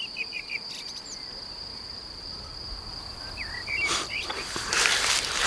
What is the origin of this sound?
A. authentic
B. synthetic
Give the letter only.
A